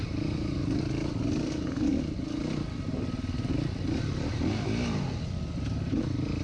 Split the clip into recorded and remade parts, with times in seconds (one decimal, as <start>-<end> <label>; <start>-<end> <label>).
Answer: 0.0-6.4 recorded